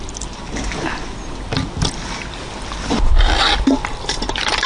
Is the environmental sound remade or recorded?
recorded